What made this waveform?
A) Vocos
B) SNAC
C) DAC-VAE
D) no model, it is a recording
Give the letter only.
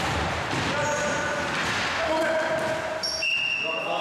D